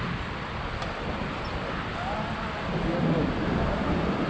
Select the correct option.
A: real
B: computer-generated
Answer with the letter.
A